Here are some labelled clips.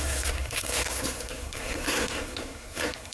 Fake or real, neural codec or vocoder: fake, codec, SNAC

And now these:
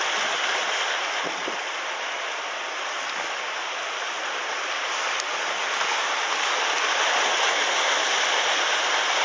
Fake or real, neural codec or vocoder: real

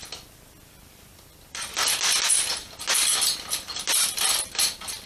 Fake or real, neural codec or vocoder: real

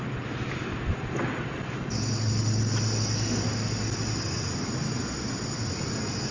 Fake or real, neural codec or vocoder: real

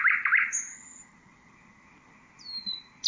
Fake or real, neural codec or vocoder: real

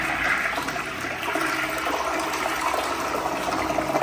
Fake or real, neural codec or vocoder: real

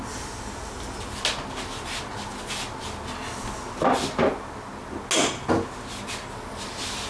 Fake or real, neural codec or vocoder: real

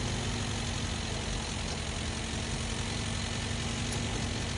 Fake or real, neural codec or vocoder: real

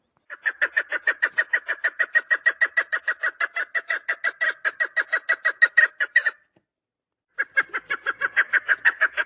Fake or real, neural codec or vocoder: real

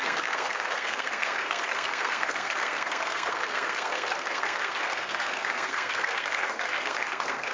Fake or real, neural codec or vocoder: fake, codec, SNAC